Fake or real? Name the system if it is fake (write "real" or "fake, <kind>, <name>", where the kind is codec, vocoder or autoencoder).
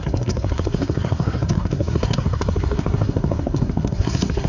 fake, codec, SNAC